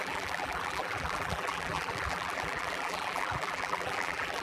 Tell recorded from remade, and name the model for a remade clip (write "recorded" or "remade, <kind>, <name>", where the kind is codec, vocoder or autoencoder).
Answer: remade, vocoder, BigVGAN v2